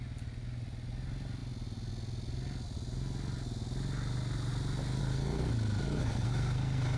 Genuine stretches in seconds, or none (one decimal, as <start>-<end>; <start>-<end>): 0.0-5.0; 5.5-5.9